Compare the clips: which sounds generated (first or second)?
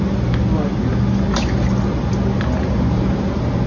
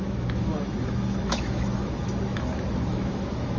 second